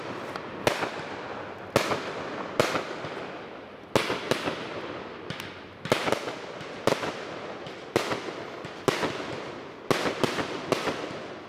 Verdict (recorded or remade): recorded